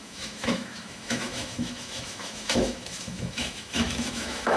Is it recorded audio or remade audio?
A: remade